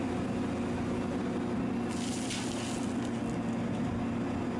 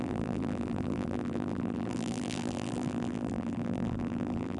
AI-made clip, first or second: second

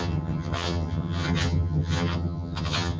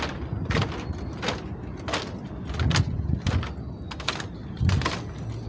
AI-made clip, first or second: first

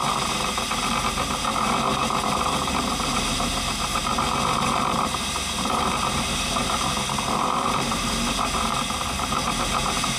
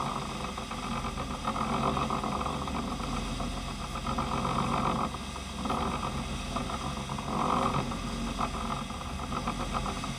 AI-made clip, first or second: first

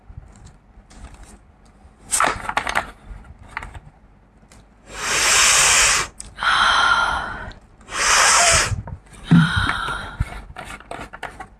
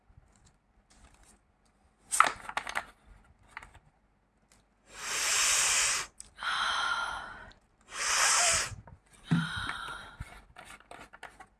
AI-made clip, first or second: first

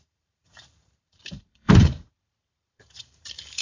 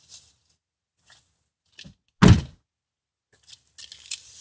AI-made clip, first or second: first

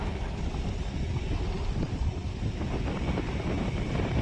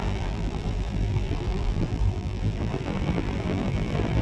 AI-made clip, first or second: second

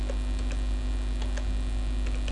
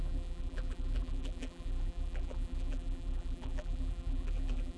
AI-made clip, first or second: second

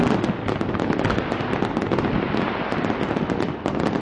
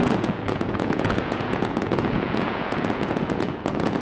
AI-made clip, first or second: second